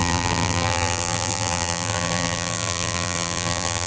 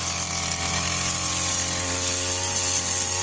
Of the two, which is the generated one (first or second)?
first